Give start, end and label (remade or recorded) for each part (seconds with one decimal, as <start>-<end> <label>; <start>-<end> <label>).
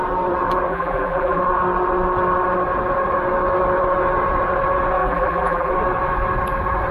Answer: 0.0-0.7 recorded; 0.7-1.4 remade; 1.4-5.0 recorded; 5.0-5.7 remade; 5.7-6.9 recorded